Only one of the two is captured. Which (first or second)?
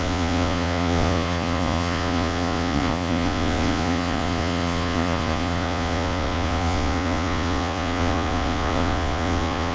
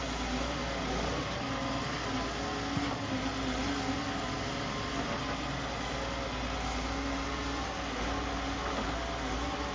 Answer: second